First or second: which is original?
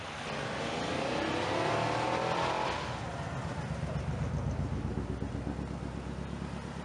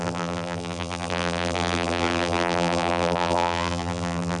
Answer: first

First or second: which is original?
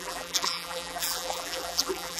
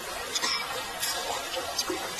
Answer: second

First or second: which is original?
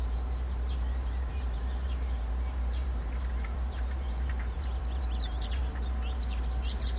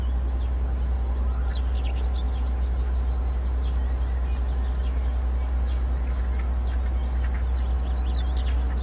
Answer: second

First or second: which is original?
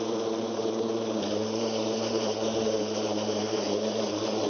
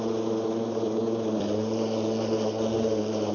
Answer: second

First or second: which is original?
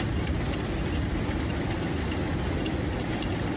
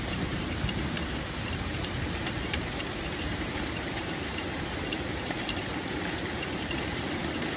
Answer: first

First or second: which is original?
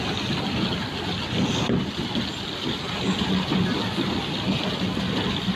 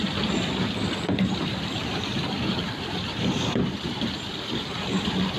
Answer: first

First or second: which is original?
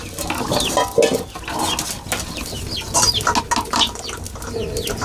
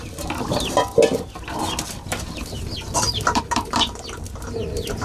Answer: first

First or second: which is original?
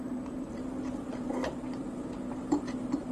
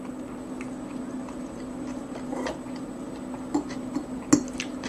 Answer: second